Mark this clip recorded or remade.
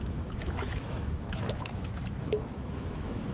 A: remade